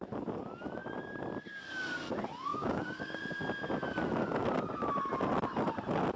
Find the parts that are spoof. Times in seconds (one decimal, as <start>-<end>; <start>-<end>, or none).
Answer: 2.5-3.2